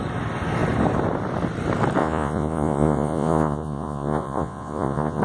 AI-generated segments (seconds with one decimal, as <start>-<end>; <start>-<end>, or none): 2.0-5.2